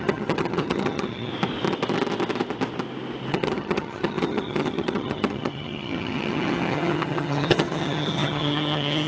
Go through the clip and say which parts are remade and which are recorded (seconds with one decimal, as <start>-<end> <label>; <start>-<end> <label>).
0.0-1.3 remade; 1.3-3.3 recorded; 3.3-9.1 remade